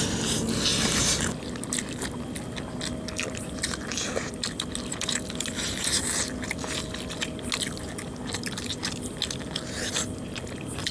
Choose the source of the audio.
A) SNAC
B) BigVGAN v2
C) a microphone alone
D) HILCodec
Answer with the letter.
C